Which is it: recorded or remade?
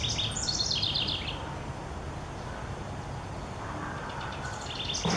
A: recorded